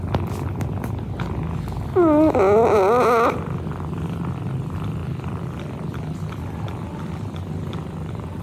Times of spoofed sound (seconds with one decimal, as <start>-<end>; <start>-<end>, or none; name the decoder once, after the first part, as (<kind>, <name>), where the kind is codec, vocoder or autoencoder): none